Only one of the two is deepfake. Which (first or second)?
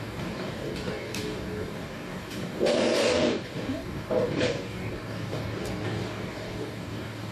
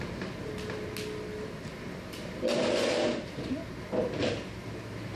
first